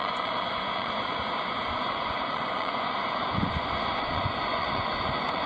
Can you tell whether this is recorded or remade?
remade